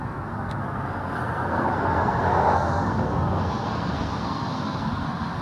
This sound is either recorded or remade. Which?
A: remade